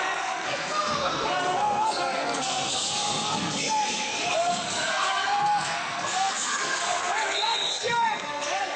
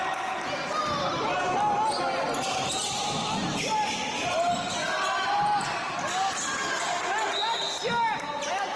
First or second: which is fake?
first